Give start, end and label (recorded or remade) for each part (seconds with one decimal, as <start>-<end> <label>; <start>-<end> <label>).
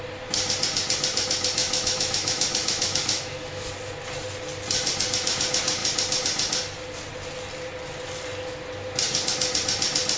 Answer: 0.0-1.6 recorded; 1.6-3.7 remade; 3.7-10.2 recorded